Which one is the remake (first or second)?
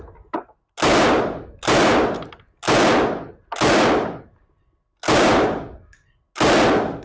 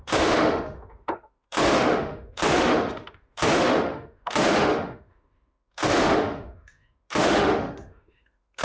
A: second